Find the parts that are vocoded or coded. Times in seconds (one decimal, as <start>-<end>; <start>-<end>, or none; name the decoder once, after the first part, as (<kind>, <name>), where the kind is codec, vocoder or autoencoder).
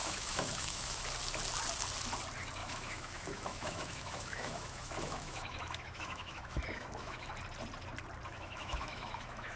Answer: 0.0-1.0 (autoencoder, DAC-VAE); 2.6-7.3; 8.3-9.6